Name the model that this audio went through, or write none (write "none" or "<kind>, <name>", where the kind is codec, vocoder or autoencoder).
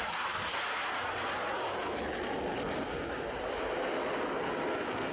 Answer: none